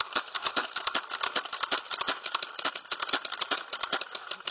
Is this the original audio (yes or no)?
yes